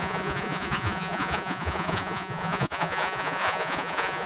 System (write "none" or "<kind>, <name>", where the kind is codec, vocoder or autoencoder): vocoder, Vocos